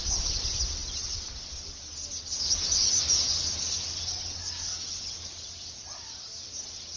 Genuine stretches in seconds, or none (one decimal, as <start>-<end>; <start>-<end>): 0.0-7.0